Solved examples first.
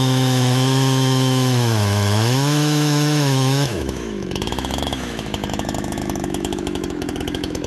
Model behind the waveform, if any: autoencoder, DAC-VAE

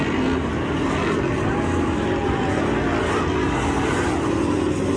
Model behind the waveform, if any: none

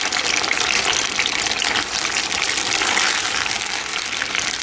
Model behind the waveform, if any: vocoder, BigVGAN v2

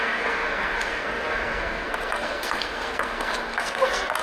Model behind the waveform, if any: codec, SNAC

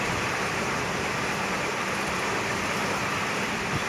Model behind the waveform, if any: vocoder, BigVGAN v2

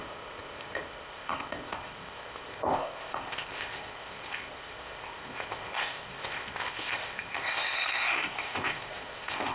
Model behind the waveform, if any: codec, ZipCodec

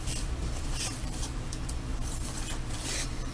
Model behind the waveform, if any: vocoder, BigVGAN v2